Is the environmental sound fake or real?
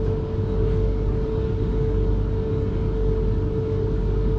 fake